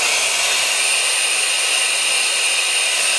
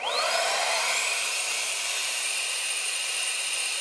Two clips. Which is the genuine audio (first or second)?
first